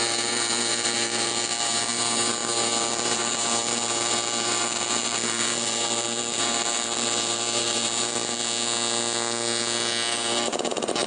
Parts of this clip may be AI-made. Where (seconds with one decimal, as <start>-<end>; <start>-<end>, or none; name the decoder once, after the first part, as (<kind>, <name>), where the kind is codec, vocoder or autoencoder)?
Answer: 0.0-8.4 (vocoder, BigVGAN v2); 10.1-11.1